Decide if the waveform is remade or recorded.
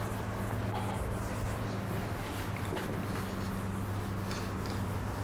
recorded